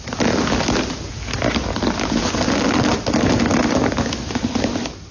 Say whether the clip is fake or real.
real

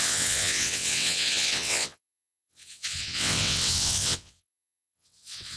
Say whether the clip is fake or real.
fake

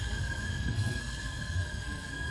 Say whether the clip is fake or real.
fake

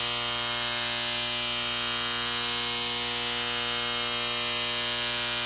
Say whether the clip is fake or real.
real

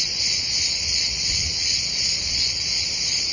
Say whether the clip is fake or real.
fake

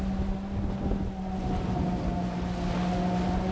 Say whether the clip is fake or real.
real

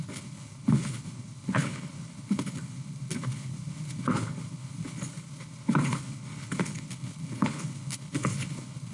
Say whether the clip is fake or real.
fake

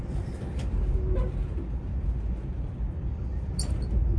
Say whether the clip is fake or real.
real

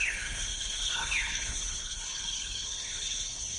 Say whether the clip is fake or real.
fake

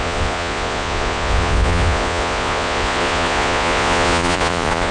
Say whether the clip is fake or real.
fake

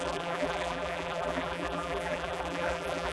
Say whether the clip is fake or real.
fake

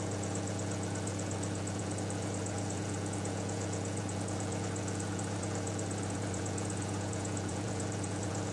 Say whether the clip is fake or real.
fake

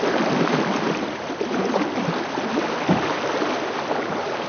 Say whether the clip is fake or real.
fake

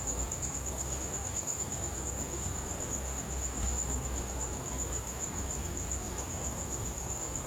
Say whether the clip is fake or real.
fake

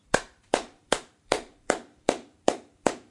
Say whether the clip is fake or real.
fake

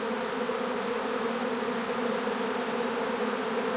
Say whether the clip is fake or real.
real